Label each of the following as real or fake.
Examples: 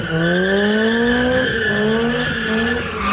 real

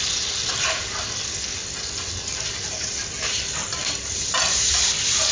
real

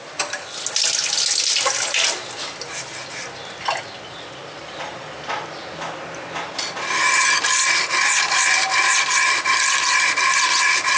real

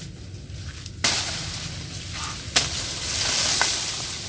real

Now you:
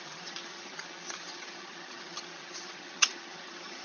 fake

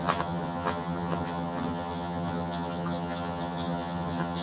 fake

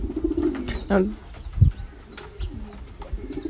real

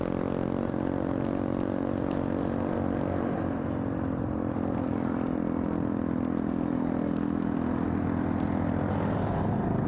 real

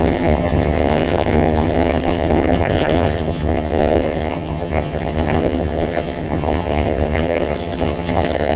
fake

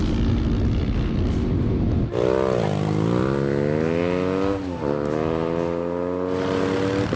real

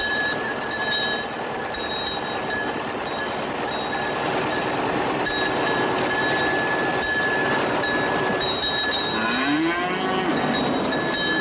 real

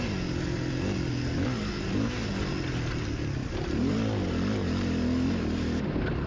real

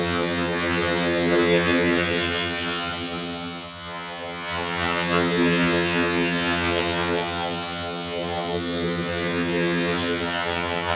fake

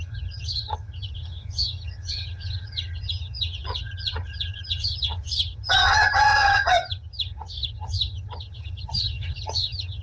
fake